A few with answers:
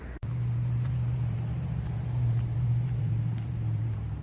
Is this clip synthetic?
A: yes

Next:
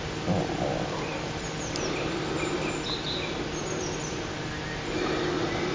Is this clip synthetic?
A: no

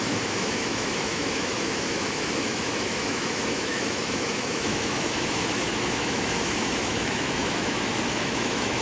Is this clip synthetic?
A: yes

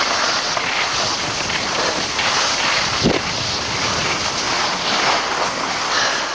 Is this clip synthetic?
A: no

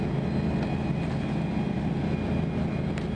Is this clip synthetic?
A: no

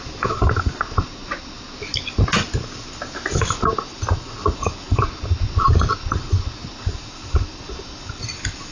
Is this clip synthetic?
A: no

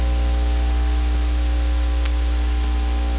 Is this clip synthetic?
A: no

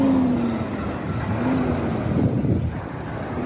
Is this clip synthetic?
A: no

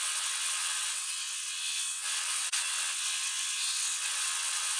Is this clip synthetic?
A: yes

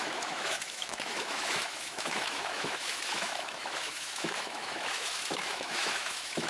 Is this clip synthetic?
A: yes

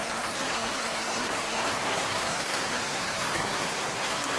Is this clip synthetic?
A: yes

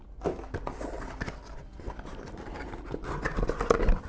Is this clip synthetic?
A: no